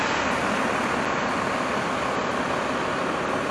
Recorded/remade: recorded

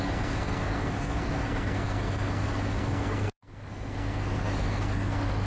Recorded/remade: remade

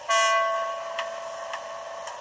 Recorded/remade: recorded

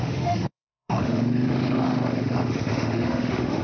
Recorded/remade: remade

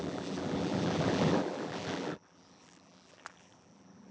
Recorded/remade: remade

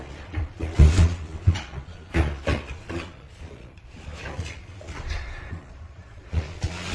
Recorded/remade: remade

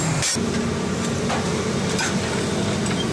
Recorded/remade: recorded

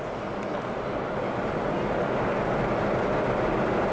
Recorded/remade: recorded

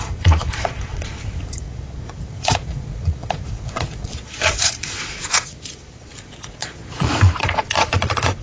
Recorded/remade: remade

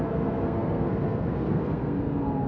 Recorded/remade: remade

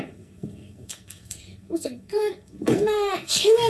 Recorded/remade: remade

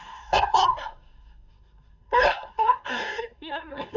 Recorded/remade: remade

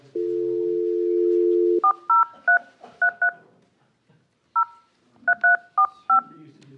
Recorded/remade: recorded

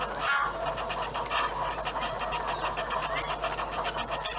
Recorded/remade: recorded